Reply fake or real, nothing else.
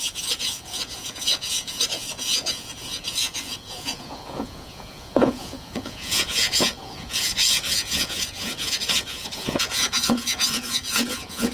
fake